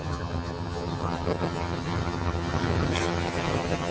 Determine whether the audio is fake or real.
fake